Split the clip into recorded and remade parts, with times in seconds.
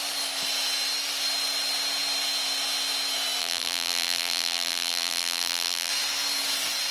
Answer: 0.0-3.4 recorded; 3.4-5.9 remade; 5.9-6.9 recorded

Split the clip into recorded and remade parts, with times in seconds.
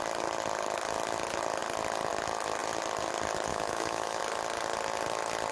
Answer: 0.0-3.5 recorded; 3.5-4.2 remade; 4.2-5.5 recorded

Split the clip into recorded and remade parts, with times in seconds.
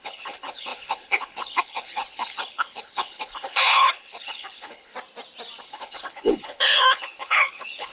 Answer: 0.0-4.9 remade; 4.9-5.6 recorded; 5.6-7.9 remade